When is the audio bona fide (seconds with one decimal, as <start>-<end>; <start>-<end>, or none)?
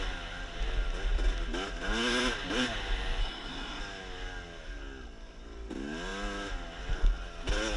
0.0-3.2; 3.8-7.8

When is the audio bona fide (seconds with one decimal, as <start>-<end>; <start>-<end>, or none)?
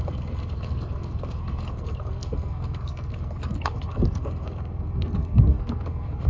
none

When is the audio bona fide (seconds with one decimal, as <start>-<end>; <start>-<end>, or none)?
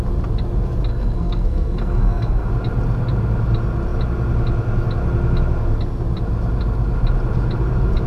0.0-0.9; 2.5-8.1